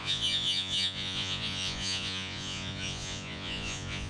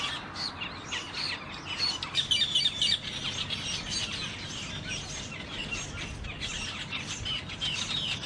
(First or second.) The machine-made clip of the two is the first